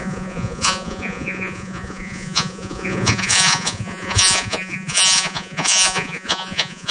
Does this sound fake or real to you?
fake